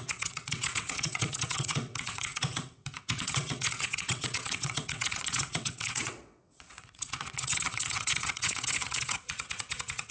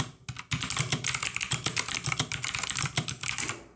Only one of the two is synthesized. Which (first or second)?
first